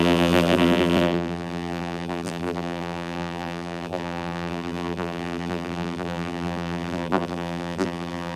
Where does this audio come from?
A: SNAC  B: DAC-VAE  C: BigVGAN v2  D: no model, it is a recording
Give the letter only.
C